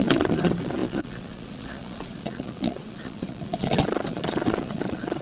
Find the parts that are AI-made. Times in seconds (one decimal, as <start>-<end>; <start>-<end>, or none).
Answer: 0.0-5.2